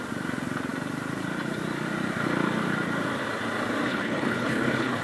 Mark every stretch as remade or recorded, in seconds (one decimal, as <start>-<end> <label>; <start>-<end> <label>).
0.0-3.9 recorded; 3.9-5.0 remade